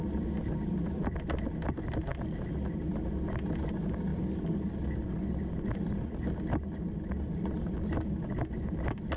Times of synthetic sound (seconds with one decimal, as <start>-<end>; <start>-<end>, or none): none